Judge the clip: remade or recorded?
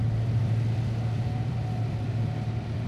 remade